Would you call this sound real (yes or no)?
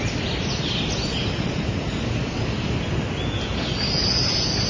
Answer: yes